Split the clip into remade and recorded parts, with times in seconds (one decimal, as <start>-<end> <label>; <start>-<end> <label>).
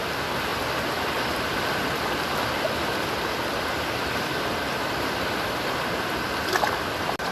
0.0-7.3 recorded